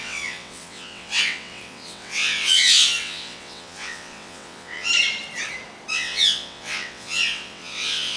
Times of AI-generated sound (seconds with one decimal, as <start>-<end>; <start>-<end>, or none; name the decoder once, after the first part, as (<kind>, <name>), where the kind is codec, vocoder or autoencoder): 0.0-4.9 (vocoder, WaveNeXt); 5.9-8.2